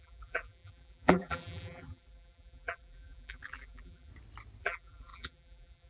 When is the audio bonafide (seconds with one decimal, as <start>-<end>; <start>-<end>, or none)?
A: 4.1-4.6